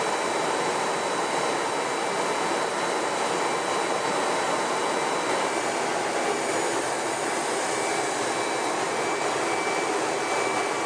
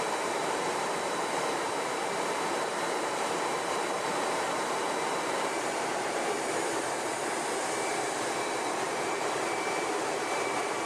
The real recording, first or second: first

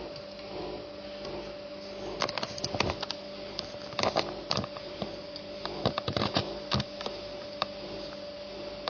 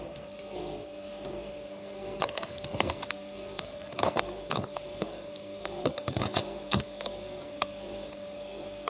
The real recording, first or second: first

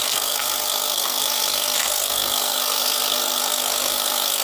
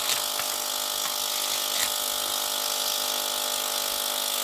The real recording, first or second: second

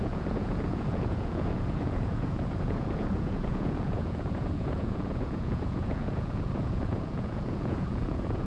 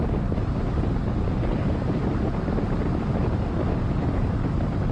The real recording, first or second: second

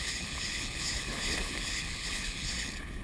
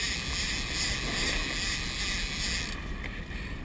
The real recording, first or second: second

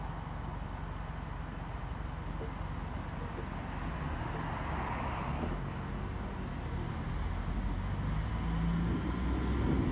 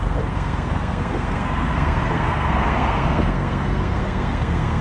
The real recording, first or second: first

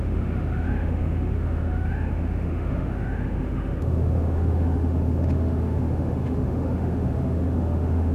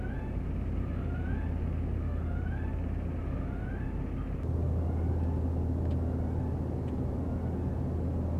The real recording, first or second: second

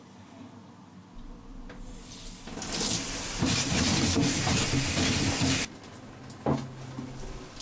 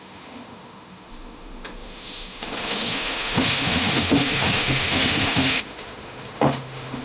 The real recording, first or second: first